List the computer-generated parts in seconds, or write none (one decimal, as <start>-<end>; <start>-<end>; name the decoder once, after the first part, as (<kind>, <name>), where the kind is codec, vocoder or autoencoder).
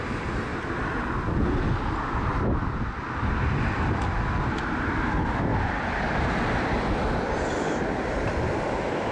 none